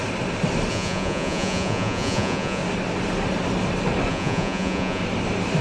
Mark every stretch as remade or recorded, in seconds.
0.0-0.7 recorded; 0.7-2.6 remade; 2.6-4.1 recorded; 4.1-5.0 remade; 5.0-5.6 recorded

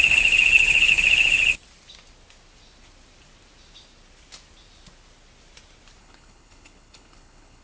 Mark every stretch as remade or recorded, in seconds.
0.0-1.4 remade; 1.4-6.0 recorded; 6.0-7.6 remade